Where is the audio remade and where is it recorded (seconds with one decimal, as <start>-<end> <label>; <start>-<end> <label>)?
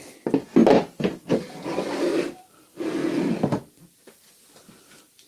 0.0-2.1 recorded; 2.1-2.6 remade; 2.6-3.0 recorded; 3.0-3.8 remade; 3.8-5.3 recorded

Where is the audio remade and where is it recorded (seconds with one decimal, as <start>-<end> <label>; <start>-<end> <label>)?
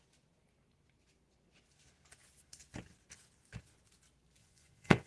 0.0-4.4 recorded; 4.4-5.1 remade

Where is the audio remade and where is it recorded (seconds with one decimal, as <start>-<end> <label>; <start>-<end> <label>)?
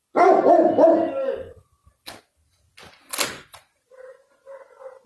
0.0-5.1 recorded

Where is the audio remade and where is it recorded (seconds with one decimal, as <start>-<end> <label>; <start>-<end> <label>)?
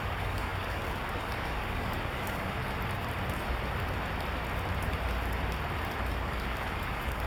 0.0-2.6 remade; 2.6-6.1 recorded; 6.1-7.3 remade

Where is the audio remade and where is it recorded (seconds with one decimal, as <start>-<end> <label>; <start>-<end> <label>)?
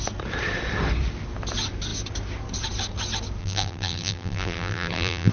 0.0-3.4 recorded; 3.4-5.3 remade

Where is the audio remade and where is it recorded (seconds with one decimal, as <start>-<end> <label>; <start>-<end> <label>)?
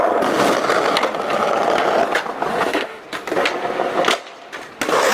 0.0-2.5 recorded; 2.5-3.0 remade; 3.0-5.1 recorded